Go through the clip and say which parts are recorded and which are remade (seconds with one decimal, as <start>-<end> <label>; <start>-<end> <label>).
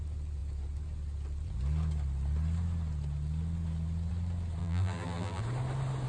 0.0-4.6 recorded; 4.6-5.4 remade; 5.4-6.1 recorded